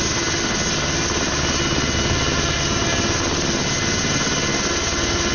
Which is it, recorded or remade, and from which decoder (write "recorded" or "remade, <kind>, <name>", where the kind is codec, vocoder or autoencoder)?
recorded